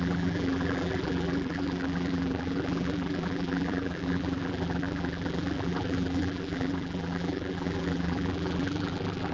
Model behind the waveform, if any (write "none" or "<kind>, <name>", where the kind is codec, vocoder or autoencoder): vocoder, BigVGAN v2